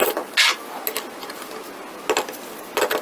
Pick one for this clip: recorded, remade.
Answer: recorded